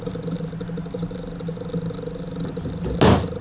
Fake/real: real